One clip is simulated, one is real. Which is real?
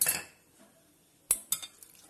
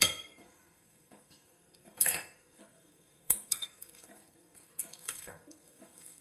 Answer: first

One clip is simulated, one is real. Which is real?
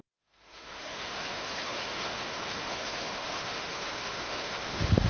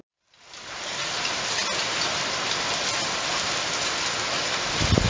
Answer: second